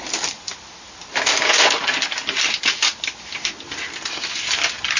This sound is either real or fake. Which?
real